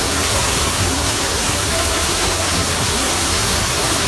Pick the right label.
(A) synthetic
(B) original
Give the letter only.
A